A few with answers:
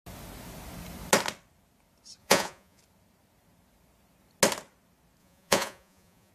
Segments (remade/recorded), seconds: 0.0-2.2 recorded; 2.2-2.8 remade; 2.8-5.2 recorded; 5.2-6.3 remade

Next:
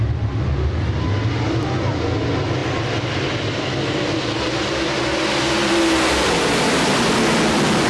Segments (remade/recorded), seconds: 0.0-7.9 recorded